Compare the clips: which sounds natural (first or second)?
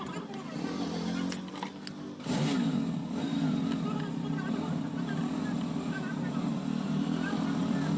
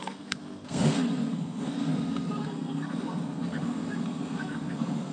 first